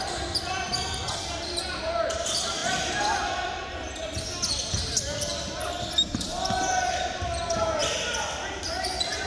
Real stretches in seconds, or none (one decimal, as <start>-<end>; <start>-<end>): 0.0-9.3

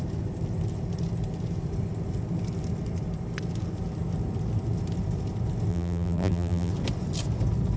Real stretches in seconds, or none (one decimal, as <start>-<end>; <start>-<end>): 0.0-5.7; 6.7-7.8

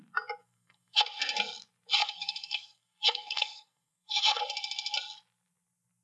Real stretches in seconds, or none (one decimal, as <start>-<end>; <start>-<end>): 0.0-0.4; 1.0-2.0; 4.4-6.0

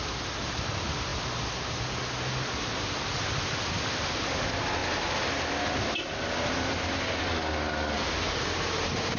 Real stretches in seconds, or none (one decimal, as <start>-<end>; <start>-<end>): 0.0-9.2

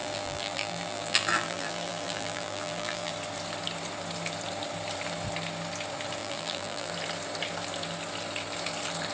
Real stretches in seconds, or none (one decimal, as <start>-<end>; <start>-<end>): 3.1-6.2; 6.9-9.1

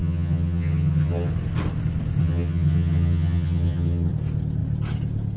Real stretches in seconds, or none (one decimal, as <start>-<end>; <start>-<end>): 1.3-2.2; 4.1-5.4

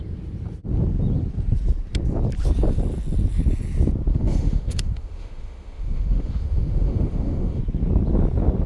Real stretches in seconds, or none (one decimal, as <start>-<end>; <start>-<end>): 0.0-4.1; 7.6-8.7

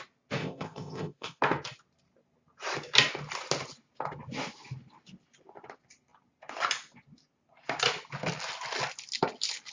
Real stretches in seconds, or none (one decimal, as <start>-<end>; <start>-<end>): 0.0-0.4; 1.4-9.7